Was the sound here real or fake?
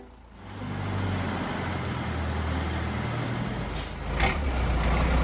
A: real